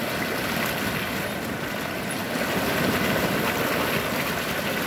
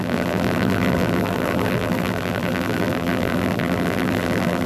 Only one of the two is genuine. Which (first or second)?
first